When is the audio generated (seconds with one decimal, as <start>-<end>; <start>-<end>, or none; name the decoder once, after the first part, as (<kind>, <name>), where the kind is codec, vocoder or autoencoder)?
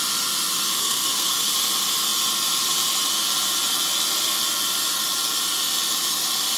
0.8-1.3 (codec, SNAC)